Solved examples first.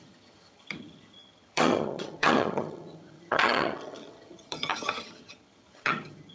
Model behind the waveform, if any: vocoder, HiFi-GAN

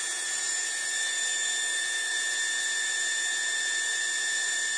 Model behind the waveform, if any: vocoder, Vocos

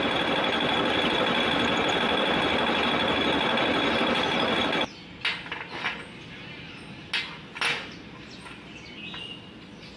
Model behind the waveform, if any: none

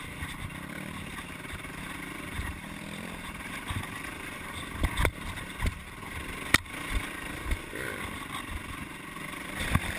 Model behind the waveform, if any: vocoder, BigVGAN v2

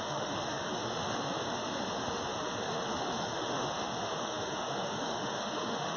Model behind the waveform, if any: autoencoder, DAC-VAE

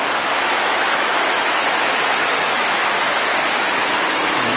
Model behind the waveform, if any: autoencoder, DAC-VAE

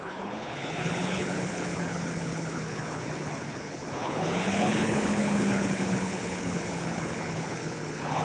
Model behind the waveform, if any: codec, HILCodec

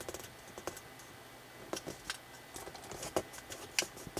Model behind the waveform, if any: none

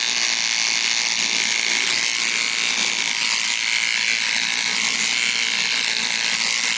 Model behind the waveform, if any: none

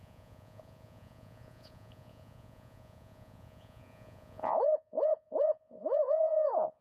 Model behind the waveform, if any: vocoder, Vocos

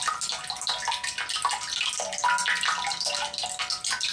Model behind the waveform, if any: none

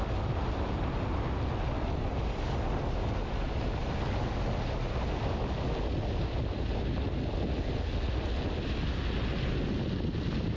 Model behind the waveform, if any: none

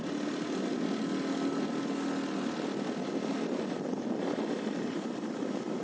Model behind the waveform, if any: none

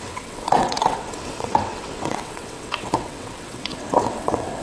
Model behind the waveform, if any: vocoder, WaveNeXt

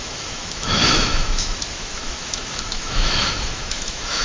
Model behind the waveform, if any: autoencoder, DAC-VAE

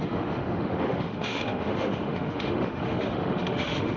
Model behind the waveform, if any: autoencoder, DAC-VAE